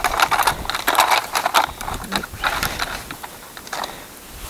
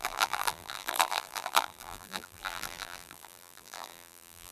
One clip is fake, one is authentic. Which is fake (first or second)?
second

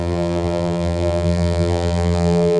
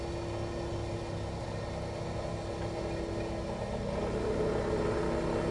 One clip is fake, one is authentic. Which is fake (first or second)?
first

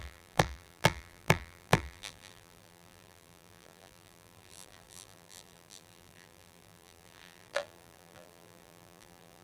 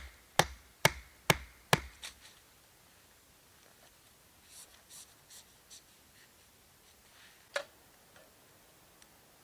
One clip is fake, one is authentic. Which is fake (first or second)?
first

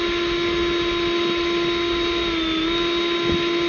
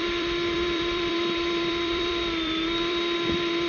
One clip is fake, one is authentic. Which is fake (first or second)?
second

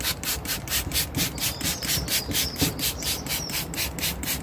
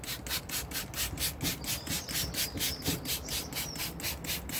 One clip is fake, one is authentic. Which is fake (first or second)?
first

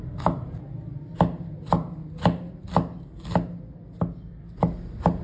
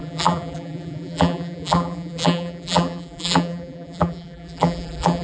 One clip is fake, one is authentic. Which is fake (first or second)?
second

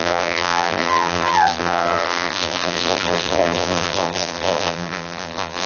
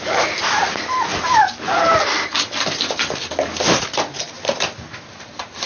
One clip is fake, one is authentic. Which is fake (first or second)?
first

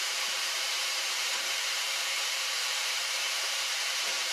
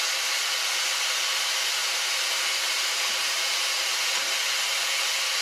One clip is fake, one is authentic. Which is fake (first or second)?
first